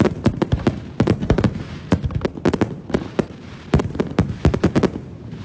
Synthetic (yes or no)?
yes